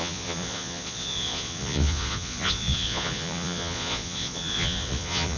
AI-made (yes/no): yes